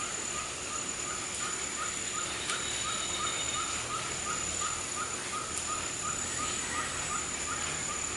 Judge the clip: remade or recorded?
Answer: recorded